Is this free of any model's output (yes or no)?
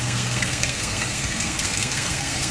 no